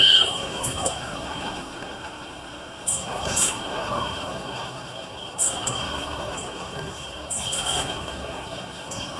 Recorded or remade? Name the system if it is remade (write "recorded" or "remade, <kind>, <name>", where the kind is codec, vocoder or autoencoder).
remade, codec, SNAC